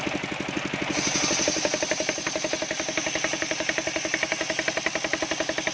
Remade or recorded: recorded